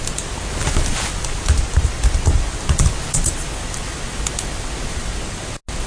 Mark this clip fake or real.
real